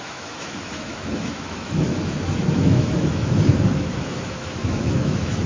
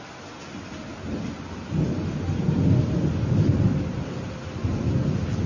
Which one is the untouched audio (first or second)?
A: second